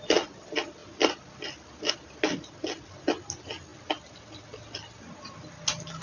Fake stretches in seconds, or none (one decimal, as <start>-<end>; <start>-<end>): none